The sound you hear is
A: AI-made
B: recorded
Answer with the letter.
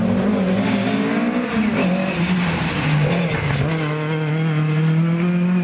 B